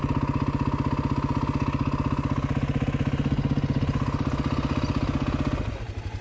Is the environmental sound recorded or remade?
recorded